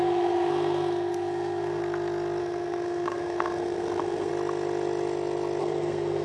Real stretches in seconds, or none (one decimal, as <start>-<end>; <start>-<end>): 1.8-2.4; 4.3-5.6